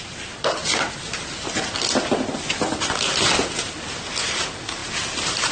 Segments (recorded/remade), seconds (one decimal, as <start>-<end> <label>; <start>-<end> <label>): 0.0-5.5 recorded